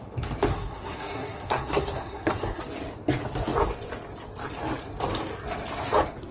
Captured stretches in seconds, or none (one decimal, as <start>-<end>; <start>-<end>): 0.0-0.5; 2.6-6.3

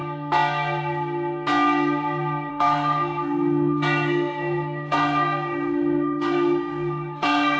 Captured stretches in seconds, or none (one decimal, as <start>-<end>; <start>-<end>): 0.0-2.5

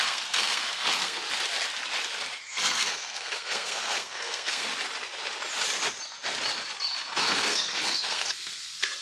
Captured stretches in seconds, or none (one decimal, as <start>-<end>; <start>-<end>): 1.2-2.4; 4.7-7.2

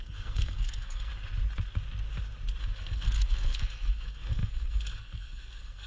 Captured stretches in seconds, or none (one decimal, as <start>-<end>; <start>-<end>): 1.1-2.6

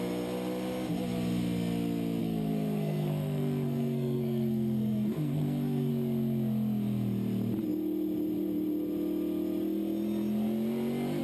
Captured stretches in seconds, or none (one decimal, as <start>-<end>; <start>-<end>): 0.0-2.2; 5.9-11.2

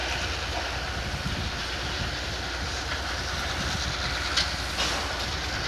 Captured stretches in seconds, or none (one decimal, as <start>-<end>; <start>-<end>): 0.0-5.7

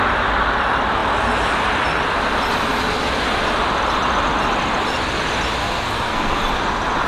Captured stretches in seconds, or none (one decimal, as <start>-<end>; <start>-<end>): 0.0-5.6; 6.4-7.1